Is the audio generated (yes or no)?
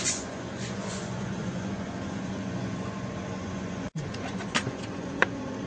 yes